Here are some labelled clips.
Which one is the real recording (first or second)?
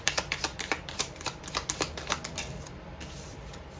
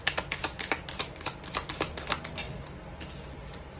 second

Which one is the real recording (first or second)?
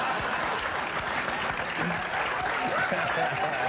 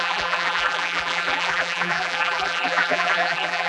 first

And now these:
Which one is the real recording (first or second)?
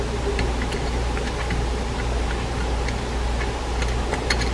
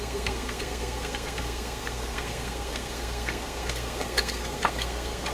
first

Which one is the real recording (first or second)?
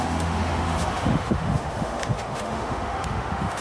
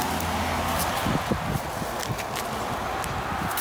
second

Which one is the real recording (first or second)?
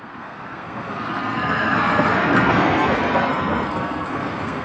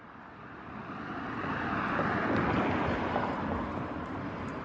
second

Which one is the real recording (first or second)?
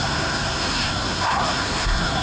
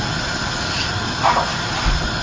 second